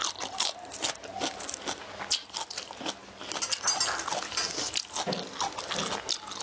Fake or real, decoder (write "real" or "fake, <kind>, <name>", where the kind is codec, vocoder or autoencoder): real